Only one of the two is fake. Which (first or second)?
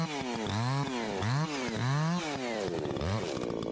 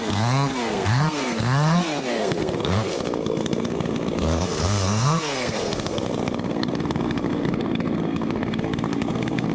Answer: second